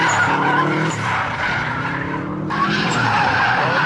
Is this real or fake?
fake